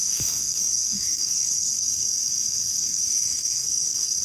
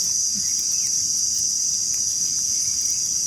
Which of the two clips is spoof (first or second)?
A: first